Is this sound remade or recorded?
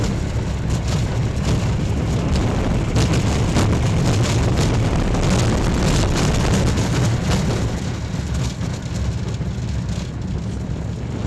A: recorded